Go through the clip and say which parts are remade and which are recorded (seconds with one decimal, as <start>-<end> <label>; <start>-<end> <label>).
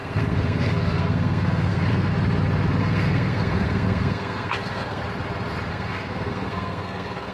0.0-2.1 remade; 2.1-2.8 recorded; 2.8-5.0 remade; 5.0-5.7 recorded; 5.7-7.3 remade